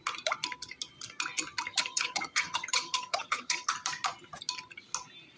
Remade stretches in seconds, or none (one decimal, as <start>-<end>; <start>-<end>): 1.7-3.7